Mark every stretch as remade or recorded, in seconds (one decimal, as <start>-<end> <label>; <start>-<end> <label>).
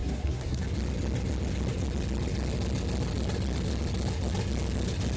0.0-0.6 remade; 0.6-5.2 recorded